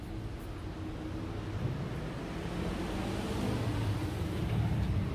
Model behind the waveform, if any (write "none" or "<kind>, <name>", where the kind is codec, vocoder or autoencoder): none